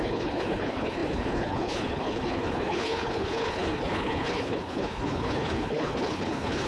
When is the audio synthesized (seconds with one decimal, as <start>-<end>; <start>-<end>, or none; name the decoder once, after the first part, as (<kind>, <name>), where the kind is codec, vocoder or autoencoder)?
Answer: 0.0-6.7 (codec, HILCodec)